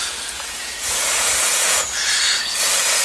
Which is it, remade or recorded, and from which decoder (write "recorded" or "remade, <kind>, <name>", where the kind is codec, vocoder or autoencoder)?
remade, vocoder, Vocos